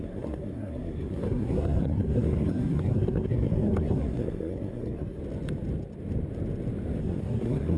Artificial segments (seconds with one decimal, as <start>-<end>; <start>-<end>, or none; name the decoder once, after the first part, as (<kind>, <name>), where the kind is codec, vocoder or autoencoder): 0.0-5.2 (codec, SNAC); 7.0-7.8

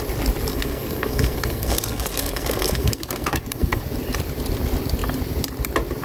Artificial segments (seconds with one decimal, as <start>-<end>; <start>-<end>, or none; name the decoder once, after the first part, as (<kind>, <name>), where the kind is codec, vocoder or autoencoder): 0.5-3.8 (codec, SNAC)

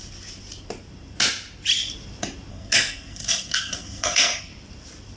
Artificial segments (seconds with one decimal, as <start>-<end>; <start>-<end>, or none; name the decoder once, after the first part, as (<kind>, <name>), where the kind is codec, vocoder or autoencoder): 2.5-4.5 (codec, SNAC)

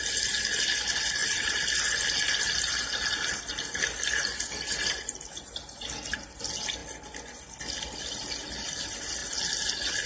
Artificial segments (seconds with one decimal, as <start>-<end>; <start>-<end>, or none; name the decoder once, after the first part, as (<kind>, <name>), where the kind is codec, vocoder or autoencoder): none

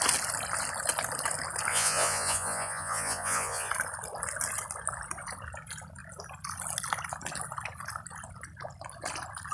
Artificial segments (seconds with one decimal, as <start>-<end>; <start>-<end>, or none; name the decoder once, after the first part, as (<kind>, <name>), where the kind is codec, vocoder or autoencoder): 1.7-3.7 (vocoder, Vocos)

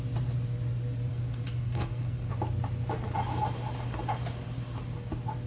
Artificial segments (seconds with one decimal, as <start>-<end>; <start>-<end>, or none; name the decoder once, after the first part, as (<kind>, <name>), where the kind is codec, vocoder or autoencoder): 1.1-2.3 (codec, SNAC)

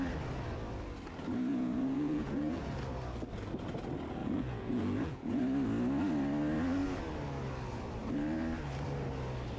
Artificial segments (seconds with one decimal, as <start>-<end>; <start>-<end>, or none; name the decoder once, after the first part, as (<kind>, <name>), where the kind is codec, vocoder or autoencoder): 1.5-2.8 (vocoder, Vocos); 4.2-5.4

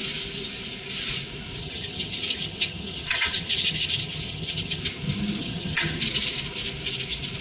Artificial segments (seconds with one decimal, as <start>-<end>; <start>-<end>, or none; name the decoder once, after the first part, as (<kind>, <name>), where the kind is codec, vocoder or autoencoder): 1.6-4.8 (vocoder, HiFi-GAN); 5.4-6.0